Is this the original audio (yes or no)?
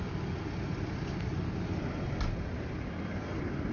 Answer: yes